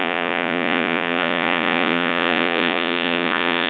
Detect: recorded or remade remade